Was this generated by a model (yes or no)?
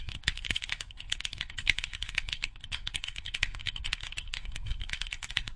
yes